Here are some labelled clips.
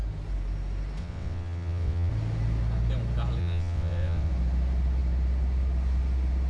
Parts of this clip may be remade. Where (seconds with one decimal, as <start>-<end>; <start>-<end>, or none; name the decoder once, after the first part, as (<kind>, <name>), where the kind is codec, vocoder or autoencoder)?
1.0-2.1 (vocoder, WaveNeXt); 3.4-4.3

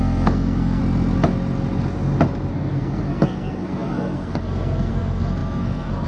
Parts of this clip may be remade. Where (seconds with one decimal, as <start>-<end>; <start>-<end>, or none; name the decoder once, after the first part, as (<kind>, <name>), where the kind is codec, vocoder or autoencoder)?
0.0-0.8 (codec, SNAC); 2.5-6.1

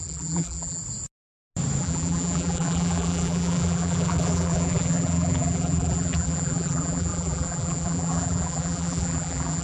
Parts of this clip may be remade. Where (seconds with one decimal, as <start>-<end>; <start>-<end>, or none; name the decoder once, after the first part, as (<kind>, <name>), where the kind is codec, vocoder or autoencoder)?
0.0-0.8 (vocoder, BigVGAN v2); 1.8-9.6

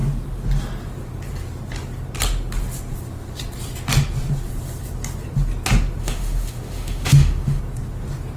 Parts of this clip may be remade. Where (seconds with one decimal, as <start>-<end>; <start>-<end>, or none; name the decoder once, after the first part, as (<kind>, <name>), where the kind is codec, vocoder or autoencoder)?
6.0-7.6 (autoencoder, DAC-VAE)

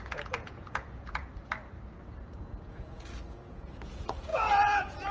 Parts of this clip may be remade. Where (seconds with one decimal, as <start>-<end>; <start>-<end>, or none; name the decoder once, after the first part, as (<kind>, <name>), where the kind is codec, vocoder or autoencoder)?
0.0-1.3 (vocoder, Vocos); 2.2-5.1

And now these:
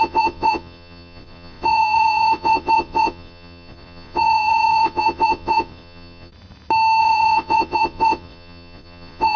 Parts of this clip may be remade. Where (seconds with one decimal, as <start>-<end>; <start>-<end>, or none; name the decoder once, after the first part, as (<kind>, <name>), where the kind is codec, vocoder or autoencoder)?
0.0-6.3 (vocoder, Vocos); 7.0-9.4